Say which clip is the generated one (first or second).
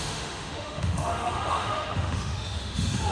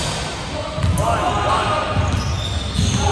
first